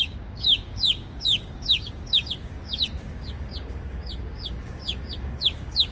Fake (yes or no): yes